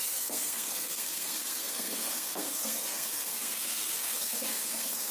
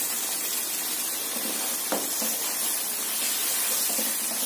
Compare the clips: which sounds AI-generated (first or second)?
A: first